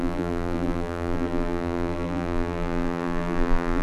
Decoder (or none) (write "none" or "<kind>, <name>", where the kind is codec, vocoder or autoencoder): vocoder, BigVGAN v2